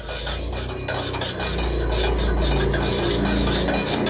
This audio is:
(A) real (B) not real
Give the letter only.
A